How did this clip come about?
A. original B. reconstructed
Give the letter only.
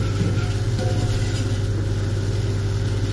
A